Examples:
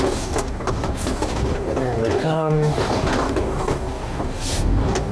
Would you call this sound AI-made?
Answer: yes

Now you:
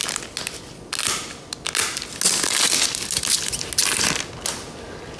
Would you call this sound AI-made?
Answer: no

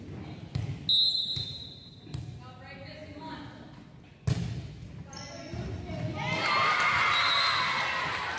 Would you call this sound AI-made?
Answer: no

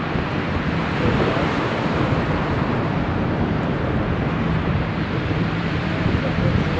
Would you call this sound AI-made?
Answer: yes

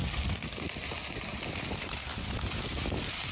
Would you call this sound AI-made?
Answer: no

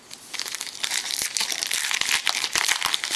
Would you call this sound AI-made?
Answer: no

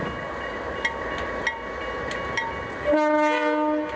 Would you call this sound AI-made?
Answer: no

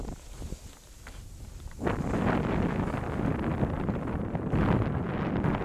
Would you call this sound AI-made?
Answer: no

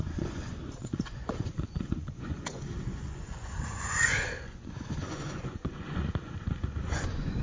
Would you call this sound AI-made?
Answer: yes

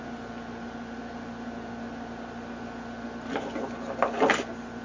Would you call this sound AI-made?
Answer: no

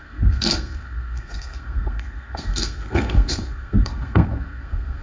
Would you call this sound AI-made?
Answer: yes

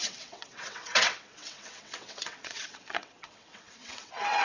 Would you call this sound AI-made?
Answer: yes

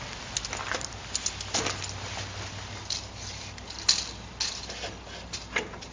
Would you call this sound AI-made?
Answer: no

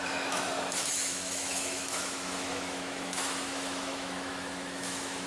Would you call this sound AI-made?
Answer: yes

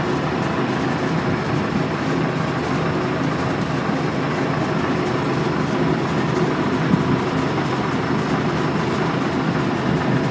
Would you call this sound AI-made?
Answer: no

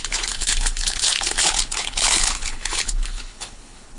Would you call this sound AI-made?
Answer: yes